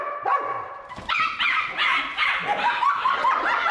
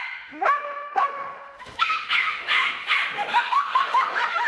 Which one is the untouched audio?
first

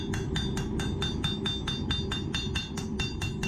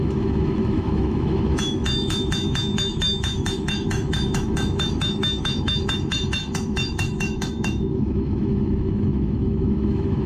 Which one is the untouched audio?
first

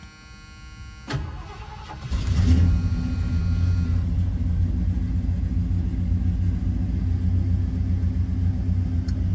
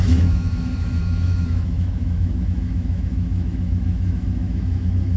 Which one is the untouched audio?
first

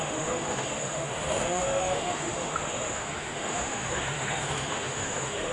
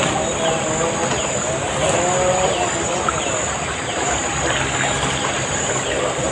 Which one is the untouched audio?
second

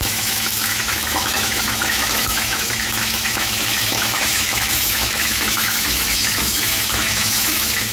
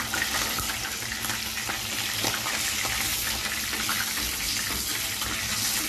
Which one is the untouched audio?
second